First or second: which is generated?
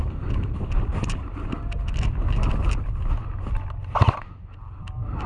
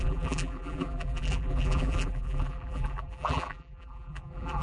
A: second